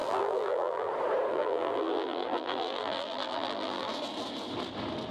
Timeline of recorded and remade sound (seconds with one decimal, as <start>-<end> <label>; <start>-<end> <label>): 0.0-0.9 remade; 0.9-1.3 recorded; 1.3-3.9 remade; 3.9-5.1 recorded